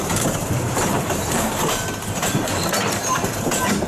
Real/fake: fake